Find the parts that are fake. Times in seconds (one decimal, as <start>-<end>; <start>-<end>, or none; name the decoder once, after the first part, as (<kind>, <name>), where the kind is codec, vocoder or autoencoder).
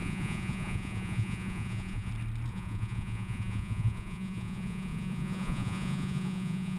0.0-2.1 (vocoder, Vocos); 2.5-6.8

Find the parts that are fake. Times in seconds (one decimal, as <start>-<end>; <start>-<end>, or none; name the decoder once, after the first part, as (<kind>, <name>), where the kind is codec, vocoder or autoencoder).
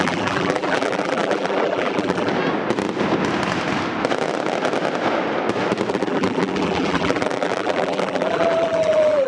0.0-2.3 (vocoder, BigVGAN v2); 5.9-9.3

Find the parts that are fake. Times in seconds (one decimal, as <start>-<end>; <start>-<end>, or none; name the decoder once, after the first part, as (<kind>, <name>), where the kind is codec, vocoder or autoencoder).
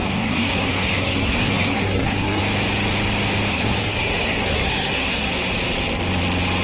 0.0-2.4 (codec, SNAC); 3.5-5.3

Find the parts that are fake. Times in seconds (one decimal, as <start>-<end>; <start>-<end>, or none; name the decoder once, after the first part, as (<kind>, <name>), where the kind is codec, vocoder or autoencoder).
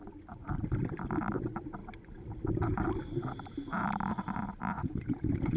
4.8-5.6 (vocoder, Vocos)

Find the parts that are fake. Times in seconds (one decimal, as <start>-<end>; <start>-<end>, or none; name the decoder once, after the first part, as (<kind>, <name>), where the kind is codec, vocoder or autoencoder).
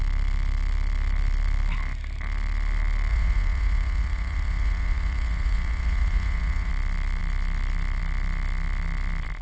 3.1-6.7 (vocoder, Vocos)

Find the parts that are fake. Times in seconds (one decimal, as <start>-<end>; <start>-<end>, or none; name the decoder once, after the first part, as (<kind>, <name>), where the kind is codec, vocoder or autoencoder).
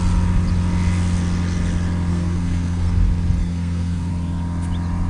2.1-2.9 (codec, SNAC); 3.4-4.1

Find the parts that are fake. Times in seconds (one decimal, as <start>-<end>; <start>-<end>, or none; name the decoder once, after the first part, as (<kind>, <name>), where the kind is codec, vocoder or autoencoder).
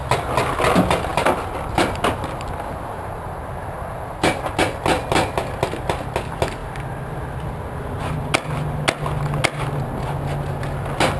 none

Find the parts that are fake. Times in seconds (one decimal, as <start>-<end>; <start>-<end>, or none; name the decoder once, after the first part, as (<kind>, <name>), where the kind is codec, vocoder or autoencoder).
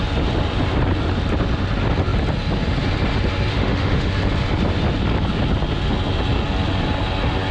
3.5-4.1 (autoencoder, DAC-VAE)